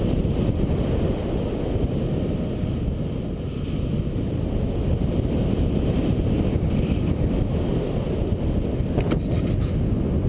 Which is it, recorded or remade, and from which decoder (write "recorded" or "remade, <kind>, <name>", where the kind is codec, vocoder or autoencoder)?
recorded